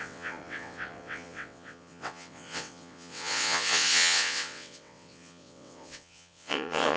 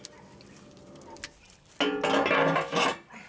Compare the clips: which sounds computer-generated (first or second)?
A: first